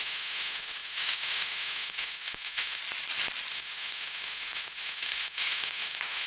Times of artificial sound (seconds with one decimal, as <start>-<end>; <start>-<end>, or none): 0.0-2.8; 3.5-6.3